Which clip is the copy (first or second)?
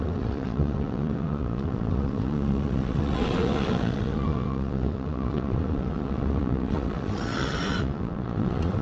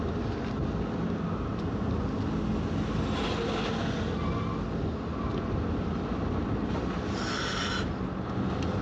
first